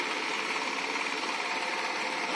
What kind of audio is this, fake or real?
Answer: real